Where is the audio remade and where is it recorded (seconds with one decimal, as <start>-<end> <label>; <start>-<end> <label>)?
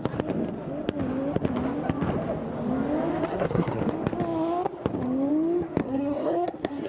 0.0-3.3 recorded; 3.3-3.8 remade; 3.8-5.8 recorded; 5.8-6.9 remade